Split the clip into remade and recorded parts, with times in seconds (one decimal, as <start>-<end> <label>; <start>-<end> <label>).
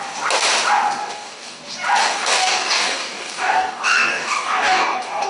0.0-1.0 recorded; 1.0-1.6 remade; 1.6-2.0 recorded; 2.0-5.3 remade